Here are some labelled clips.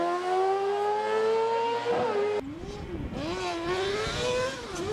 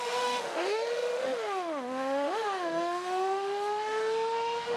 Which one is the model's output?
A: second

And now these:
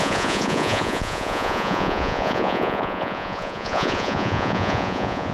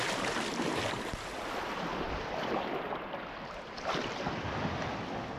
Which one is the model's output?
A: first